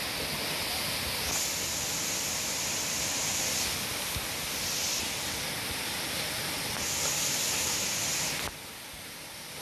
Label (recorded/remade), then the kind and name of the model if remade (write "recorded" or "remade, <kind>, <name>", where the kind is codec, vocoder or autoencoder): recorded